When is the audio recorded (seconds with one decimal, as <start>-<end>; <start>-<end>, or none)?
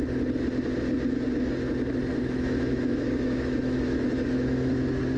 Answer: 0.0-2.1; 4.7-5.2